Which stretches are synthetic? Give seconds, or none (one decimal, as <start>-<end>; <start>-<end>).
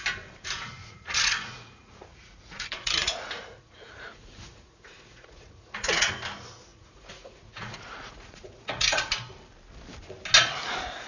0.8-6.1; 6.7-9.1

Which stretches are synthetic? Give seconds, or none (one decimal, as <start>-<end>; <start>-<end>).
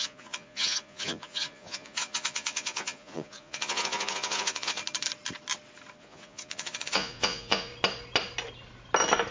0.0-4.8; 6.0-7.7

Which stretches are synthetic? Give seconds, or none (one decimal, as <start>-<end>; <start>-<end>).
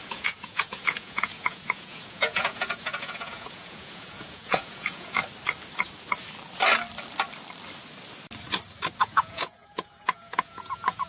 0.0-5.2; 9.0-11.1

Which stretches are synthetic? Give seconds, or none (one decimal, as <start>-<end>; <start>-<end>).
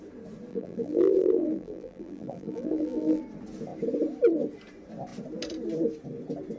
0.5-3.2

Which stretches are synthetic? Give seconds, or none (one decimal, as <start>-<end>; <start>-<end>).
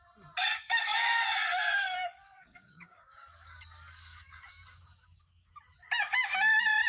0.6-1.3; 1.8-5.5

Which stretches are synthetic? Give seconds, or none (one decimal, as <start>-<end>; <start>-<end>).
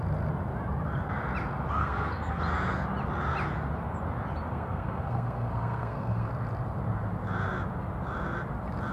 1.8-2.4; 4.5-6.3